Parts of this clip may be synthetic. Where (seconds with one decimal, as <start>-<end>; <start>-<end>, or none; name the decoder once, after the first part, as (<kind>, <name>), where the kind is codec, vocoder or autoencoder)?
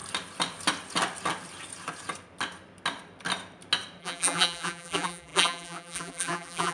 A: 4.0-6.7 (vocoder, BigVGAN v2)